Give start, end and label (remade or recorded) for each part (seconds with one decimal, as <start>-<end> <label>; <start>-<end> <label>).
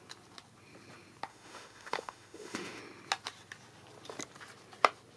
0.0-1.3 recorded; 1.3-2.8 remade; 2.8-5.2 recorded